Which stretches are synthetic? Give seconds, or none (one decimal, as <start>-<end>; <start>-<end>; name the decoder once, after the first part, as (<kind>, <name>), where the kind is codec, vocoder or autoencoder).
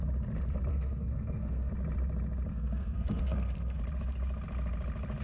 0.7-1.7 (codec, SNAC); 2.5-3.8